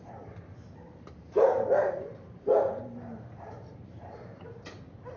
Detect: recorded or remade remade